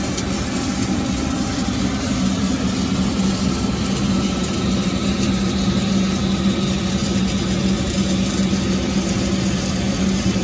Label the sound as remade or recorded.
recorded